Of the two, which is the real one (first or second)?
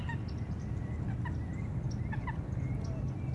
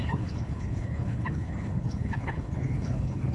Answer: first